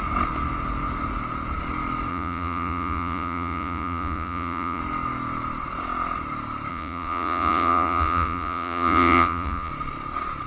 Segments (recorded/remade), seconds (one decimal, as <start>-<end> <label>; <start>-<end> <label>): 0.0-2.1 recorded; 2.1-4.8 remade; 4.8-6.7 recorded; 6.7-9.7 remade; 9.7-10.5 recorded